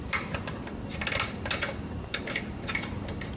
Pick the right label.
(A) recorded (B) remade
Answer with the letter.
A